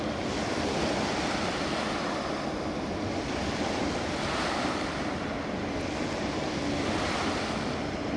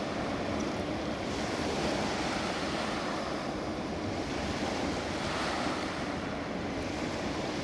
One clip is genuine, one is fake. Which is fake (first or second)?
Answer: second